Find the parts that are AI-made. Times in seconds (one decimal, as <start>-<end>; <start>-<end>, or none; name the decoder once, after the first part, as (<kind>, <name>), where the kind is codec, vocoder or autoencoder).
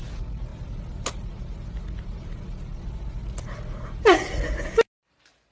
none